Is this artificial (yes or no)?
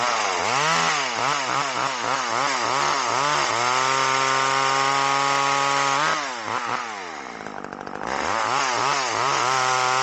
no